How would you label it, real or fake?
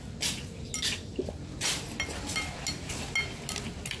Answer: real